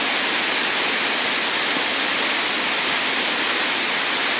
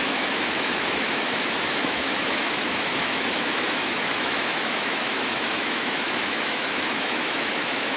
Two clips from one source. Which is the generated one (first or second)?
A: second